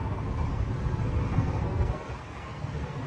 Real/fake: fake